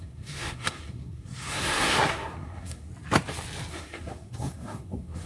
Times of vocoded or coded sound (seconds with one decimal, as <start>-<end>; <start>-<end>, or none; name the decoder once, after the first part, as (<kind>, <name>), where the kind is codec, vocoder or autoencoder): 0.0-2.9 (codec, SNAC); 3.7-5.3